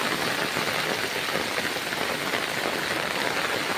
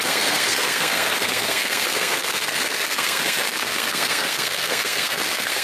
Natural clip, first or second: first